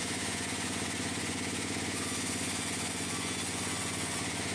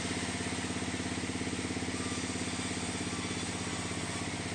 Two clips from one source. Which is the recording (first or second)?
second